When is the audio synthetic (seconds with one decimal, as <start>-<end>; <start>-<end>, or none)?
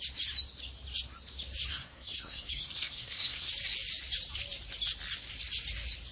1.7-3.5